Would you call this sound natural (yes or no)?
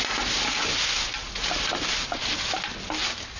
yes